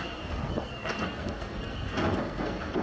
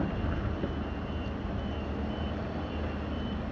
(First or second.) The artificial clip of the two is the first